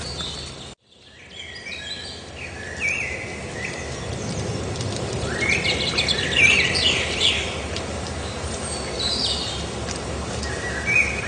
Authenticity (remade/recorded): recorded